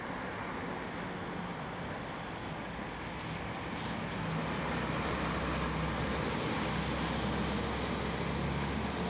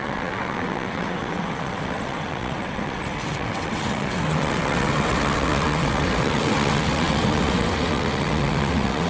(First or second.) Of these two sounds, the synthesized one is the second